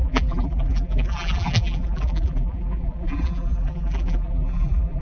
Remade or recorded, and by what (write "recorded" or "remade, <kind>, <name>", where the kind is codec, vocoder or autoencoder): remade, vocoder, BigVGAN v2